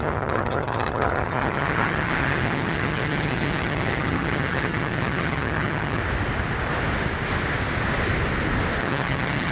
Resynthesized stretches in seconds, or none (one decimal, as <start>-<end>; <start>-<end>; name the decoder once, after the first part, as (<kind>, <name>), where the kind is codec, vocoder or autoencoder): 0.0-6.0 (vocoder, HiFi-GAN); 8.8-9.5